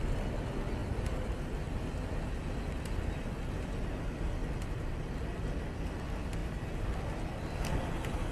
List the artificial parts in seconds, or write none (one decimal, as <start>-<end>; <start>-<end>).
6.4-7.0